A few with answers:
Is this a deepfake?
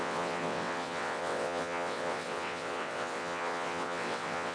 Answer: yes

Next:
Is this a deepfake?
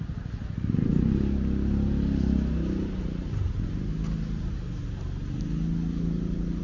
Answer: no